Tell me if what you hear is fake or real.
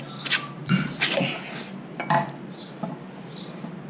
real